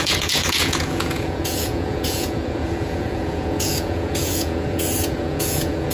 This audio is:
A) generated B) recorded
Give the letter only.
A